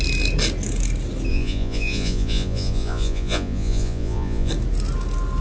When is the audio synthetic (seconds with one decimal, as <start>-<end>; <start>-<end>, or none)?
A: 1.3-4.5